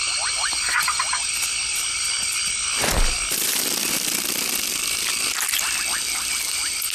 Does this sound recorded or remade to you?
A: recorded